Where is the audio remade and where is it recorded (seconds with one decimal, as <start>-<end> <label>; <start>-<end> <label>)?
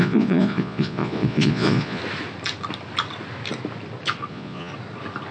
0.0-2.0 remade; 2.0-4.3 recorded; 4.3-4.7 remade; 4.7-5.3 recorded